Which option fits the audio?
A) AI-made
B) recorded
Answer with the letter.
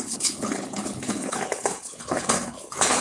A